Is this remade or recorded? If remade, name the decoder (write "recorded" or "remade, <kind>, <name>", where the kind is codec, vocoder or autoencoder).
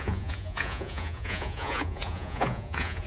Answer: remade, vocoder, Vocos